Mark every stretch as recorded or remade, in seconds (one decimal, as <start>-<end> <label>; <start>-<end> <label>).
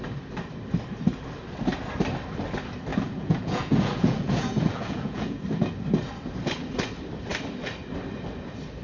0.0-2.9 recorded; 2.9-5.4 remade; 5.4-8.8 recorded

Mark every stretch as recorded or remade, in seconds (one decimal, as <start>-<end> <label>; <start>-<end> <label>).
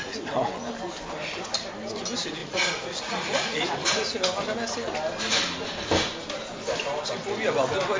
0.0-2.4 recorded; 2.4-3.7 remade; 3.7-8.0 recorded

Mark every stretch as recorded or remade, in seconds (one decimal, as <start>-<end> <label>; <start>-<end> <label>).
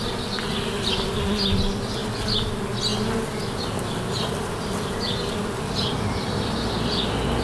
0.0-7.4 recorded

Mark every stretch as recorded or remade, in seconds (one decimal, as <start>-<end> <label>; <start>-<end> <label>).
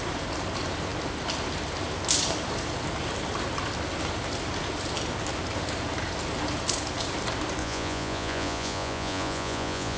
0.0-7.6 recorded; 7.6-10.0 remade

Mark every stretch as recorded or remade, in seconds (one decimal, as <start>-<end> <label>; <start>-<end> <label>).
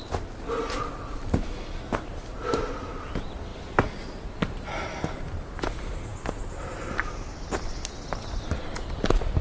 0.0-9.4 recorded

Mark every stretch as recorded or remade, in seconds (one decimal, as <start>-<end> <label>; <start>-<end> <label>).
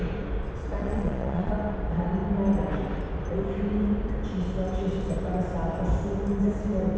0.0-0.8 recorded; 0.8-1.5 remade; 1.5-7.0 recorded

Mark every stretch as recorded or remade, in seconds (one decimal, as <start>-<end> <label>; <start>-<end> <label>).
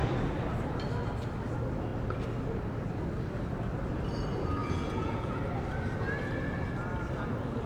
0.0-4.6 recorded; 4.6-5.4 remade; 5.4-7.7 recorded